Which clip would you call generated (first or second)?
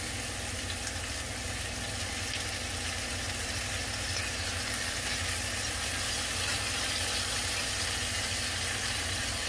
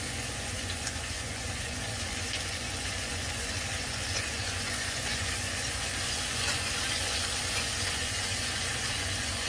second